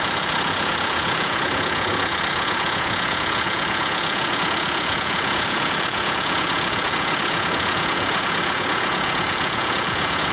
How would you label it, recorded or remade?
remade